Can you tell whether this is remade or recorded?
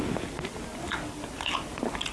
recorded